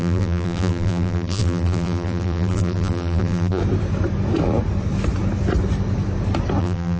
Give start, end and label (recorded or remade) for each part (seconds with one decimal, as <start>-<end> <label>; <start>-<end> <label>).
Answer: 0.0-3.6 remade; 3.6-6.6 recorded; 6.6-7.0 remade